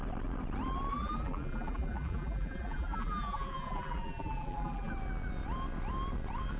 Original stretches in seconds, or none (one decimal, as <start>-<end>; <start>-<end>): 0.0-0.9; 4.9-6.6